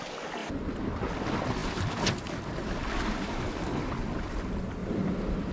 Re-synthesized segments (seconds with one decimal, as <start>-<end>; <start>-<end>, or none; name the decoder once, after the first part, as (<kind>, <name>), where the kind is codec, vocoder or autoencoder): 0.4-1.2 (vocoder, BigVGAN v2); 4.8-5.5